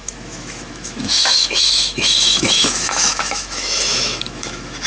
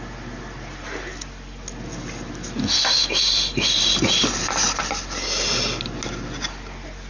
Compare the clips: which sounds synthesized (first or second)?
first